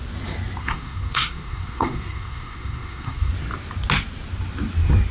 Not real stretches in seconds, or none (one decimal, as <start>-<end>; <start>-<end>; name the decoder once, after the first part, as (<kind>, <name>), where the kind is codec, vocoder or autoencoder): 0.6-3.3 (codec, SNAC)